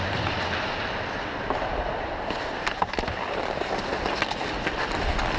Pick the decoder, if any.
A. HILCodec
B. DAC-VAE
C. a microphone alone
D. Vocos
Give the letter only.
C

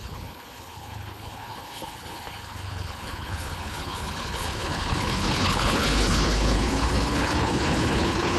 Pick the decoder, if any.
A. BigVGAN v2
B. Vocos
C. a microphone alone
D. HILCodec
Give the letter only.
D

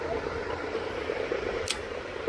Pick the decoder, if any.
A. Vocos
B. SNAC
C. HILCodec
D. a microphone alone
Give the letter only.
D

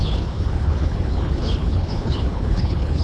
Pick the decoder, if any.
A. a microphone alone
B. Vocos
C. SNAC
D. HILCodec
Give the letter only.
D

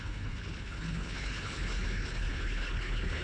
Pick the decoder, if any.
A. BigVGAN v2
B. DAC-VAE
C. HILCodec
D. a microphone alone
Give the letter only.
C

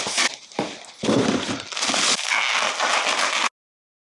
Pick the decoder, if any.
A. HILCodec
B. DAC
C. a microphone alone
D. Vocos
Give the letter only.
C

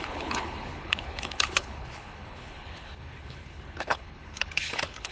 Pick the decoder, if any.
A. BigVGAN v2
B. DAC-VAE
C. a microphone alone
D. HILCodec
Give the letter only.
D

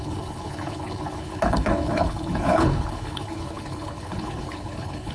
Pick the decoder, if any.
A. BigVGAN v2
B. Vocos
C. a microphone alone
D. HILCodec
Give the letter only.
D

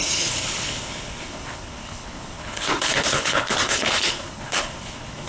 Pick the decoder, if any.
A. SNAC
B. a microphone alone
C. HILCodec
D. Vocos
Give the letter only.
C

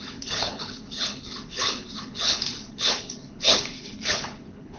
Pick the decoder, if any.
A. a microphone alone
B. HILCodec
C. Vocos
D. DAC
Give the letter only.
B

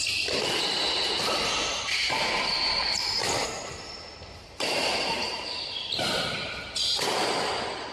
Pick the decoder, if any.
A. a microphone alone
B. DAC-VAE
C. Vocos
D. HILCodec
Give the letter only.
A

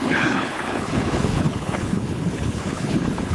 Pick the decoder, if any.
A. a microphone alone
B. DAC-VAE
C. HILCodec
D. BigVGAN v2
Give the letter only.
C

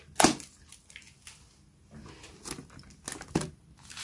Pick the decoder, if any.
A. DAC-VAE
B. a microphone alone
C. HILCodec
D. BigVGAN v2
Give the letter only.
B